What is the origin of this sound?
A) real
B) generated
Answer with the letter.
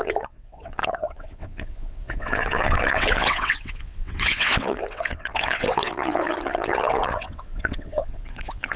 B